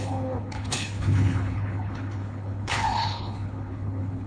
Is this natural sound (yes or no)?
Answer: no